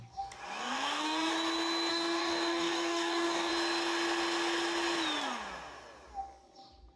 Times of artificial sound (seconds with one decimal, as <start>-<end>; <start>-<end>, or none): 0.6-1.3; 1.9-3.5